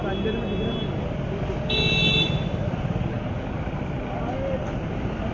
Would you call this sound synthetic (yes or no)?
no